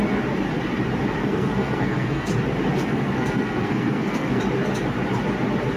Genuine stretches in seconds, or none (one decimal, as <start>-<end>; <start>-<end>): 0.0-1.2; 2.3-2.7; 4.4-5.8